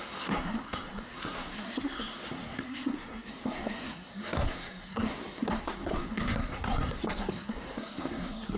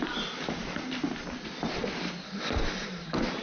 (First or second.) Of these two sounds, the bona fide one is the second